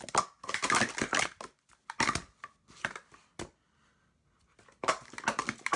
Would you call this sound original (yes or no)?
yes